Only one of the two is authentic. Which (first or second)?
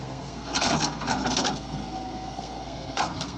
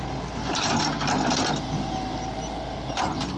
second